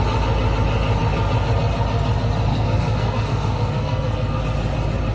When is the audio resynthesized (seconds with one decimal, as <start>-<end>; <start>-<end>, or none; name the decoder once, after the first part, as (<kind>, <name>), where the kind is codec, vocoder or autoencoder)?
2.5-4.4 (codec, SNAC)